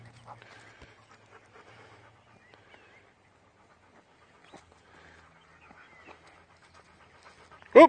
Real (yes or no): yes